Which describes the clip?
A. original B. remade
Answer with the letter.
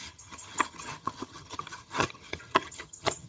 B